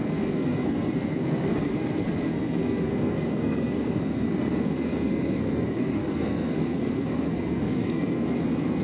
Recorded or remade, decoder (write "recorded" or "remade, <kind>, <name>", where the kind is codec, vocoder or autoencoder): remade, codec, SNAC